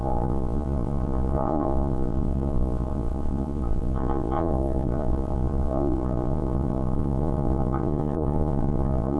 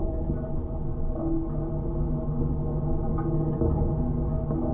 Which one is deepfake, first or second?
first